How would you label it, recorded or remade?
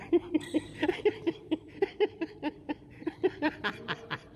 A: remade